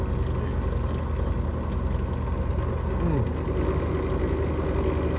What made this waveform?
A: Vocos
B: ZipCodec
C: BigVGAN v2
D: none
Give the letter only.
D